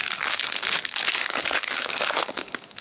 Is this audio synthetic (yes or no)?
yes